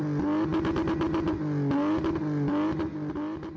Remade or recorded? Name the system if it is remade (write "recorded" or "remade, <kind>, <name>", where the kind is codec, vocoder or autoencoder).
recorded